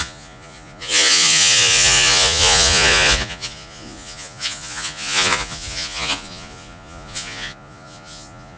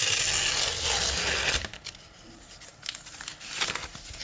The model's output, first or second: first